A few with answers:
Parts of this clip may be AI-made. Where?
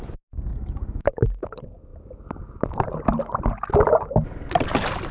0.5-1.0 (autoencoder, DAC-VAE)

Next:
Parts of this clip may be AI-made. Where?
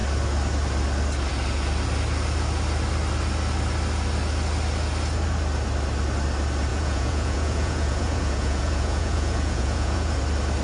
6.7-10.2 (vocoder, Vocos)